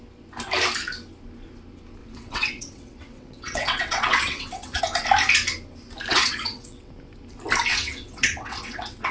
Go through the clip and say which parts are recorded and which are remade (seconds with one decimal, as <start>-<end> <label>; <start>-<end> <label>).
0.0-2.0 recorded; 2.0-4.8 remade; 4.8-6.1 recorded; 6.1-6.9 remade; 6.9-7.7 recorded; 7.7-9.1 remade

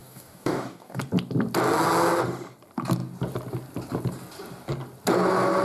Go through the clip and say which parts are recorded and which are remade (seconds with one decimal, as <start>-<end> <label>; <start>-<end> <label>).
0.0-1.0 remade; 1.0-5.6 recorded

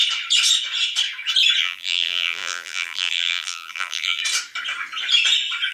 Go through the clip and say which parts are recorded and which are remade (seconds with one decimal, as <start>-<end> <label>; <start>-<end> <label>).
0.0-1.6 recorded; 1.6-4.2 remade; 4.2-5.7 recorded

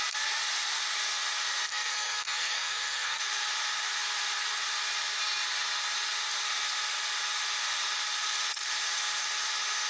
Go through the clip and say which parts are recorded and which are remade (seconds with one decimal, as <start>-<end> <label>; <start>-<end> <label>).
0.0-1.7 recorded; 1.7-3.2 remade; 3.2-9.9 recorded